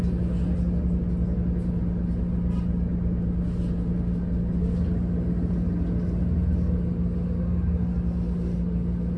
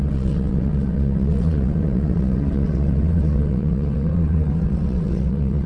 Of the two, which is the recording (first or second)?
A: first